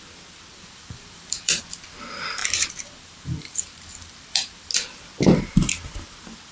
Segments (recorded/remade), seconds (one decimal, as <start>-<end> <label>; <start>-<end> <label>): 0.0-0.5 recorded; 0.5-1.5 remade; 1.5-2.4 recorded; 2.4-4.7 remade; 4.7-6.5 recorded